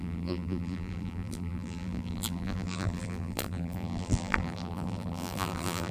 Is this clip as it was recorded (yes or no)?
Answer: no